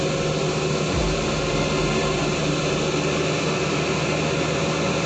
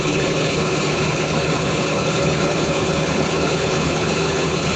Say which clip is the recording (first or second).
first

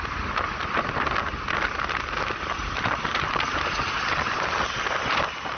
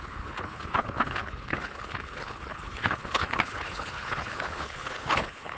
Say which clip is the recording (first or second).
first